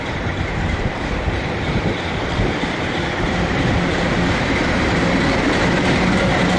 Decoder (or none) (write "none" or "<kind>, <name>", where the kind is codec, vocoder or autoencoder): vocoder, BigVGAN v2